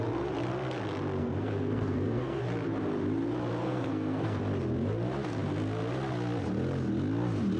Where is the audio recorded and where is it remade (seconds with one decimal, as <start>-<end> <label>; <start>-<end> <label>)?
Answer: 0.0-1.2 recorded; 1.2-2.4 remade; 2.4-3.6 recorded; 3.6-4.4 remade; 4.4-7.6 recorded